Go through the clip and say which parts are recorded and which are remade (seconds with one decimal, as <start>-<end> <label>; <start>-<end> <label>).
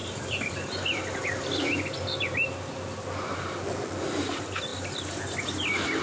0.0-1.3 remade; 1.3-4.7 recorded; 4.7-6.0 remade